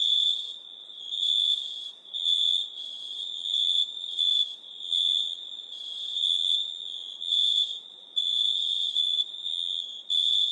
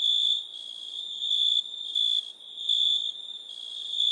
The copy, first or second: first